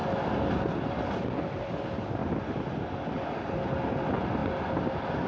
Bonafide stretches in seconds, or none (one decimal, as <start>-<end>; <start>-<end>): 0.0-5.3